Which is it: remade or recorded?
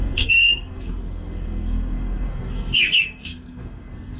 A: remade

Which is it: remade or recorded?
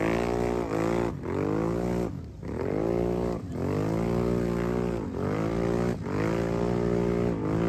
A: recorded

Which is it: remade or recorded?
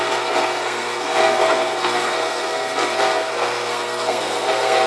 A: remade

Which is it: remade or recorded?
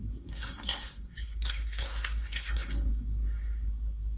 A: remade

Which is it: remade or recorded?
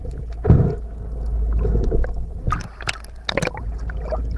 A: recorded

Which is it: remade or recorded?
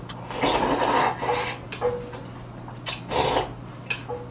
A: recorded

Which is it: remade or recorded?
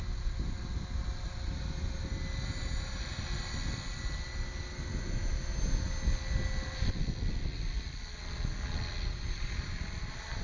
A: recorded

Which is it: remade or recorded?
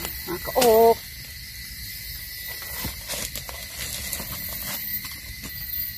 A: recorded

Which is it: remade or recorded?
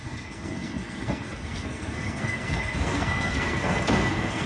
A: remade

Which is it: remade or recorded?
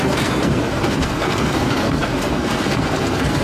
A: remade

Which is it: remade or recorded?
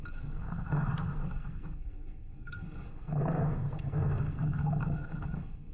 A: remade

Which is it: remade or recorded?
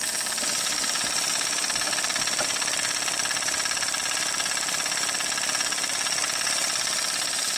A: recorded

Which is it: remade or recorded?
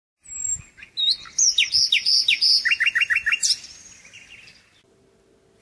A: recorded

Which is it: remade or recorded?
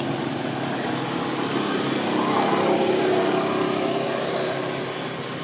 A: recorded